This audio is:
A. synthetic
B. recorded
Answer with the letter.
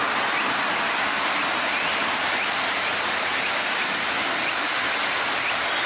B